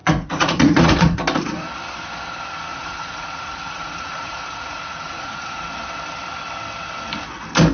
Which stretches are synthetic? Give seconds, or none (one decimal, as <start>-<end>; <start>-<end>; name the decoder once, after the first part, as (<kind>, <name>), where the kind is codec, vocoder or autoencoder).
0.0-1.2 (vocoder, Vocos); 2.7-5.7